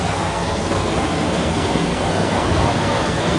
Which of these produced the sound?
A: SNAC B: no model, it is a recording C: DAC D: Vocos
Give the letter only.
A